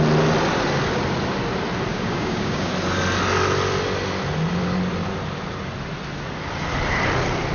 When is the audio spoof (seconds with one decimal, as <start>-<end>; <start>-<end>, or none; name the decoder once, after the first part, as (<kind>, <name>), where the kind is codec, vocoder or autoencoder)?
1.9-2.7 (codec, DAC)